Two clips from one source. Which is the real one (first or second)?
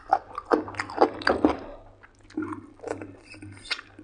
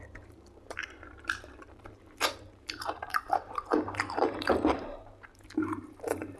first